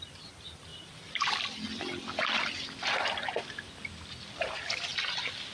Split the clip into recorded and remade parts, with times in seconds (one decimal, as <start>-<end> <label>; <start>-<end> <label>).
0.0-0.7 remade; 0.7-4.0 recorded; 4.0-4.9 remade; 4.9-5.5 recorded